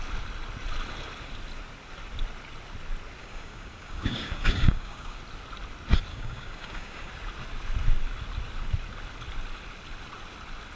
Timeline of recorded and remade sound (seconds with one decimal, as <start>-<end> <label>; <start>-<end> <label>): 0.0-3.2 recorded; 3.2-5.2 remade; 5.2-6.1 recorded; 6.1-7.1 remade; 7.1-10.8 recorded